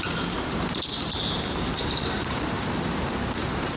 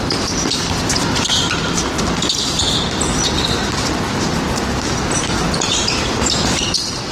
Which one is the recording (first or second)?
second